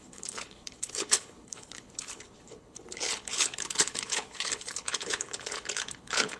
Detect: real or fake fake